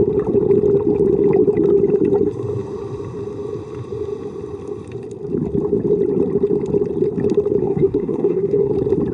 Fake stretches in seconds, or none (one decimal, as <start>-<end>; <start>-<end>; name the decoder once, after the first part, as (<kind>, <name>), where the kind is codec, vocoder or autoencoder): 7.6-8.7 (codec, SNAC)

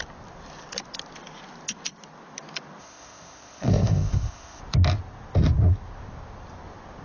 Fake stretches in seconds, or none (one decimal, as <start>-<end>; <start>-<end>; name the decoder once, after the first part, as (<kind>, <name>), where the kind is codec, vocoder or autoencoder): 2.8-4.6 (codec, ZipCodec)

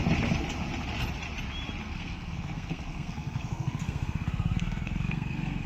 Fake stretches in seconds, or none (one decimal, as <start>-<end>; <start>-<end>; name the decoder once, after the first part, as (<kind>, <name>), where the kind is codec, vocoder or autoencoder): 1.8-5.7 (codec, SNAC)

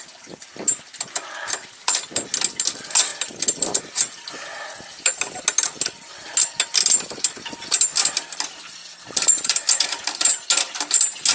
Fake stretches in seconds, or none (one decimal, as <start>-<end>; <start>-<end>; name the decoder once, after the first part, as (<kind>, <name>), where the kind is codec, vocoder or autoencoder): 3.1-3.8 (vocoder, BigVGAN v2); 8.8-10.3

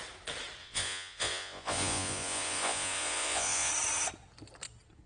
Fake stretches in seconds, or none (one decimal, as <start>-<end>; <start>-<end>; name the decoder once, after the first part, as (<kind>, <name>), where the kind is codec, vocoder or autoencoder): 0.6-3.7 (vocoder, Vocos)

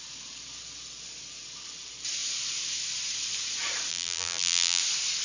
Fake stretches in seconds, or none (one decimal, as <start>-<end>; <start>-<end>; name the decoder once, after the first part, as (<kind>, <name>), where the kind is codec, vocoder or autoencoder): 3.9-4.8 (vocoder, BigVGAN v2)